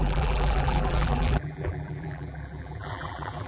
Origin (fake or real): fake